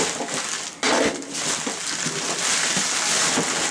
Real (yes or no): yes